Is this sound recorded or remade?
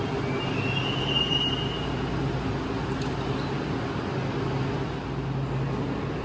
recorded